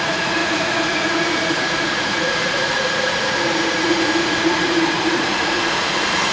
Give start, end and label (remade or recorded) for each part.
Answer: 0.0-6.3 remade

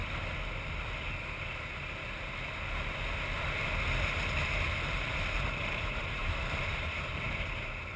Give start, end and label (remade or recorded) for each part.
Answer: 0.0-4.4 recorded; 4.4-8.0 remade

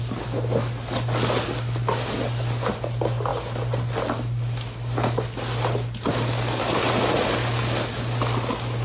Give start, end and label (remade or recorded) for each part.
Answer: 0.0-8.8 recorded

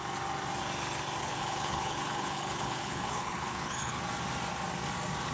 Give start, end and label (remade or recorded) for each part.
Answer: 0.0-1.2 recorded; 1.2-4.0 remade; 4.0-5.3 recorded

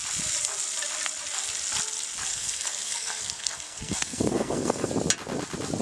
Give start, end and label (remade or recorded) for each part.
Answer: 0.0-2.3 recorded; 2.3-4.9 remade; 4.9-5.8 recorded

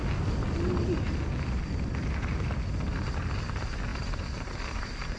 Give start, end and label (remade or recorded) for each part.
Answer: 0.0-5.2 recorded

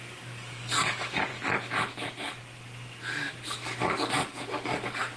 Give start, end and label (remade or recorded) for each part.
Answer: 0.0-1.3 remade; 1.3-3.3 recorded; 3.3-5.2 remade